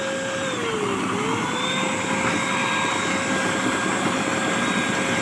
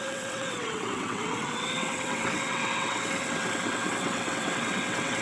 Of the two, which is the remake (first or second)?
second